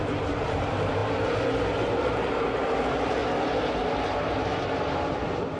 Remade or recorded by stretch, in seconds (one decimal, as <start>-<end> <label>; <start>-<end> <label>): 0.0-1.0 remade; 1.0-1.8 recorded; 1.8-3.2 remade; 3.2-3.8 recorded; 3.8-5.6 remade